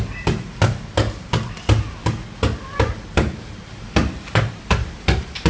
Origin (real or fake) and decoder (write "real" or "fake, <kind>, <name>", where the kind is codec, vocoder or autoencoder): real